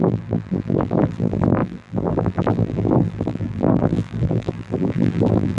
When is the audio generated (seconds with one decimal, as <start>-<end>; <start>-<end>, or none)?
0.0-5.6